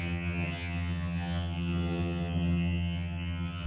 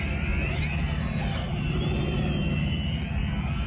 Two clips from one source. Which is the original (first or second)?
second